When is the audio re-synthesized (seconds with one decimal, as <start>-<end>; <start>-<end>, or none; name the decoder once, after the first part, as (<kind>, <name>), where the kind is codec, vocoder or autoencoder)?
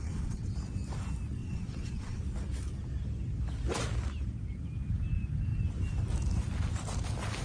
0.0-0.5 (vocoder, WaveNeXt); 1.4-2.2